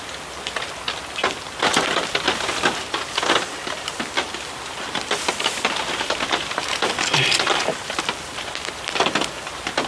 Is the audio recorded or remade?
recorded